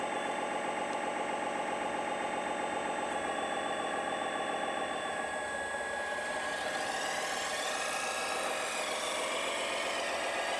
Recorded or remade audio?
recorded